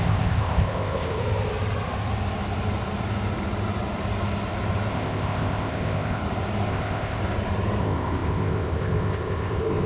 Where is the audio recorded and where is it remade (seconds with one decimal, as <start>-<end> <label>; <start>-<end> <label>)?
0.0-1.2 remade; 1.2-4.9 recorded; 4.9-6.2 remade; 6.2-6.7 recorded; 6.7-7.2 remade; 7.2-7.8 recorded; 7.8-9.9 remade